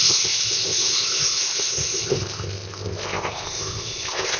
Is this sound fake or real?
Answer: fake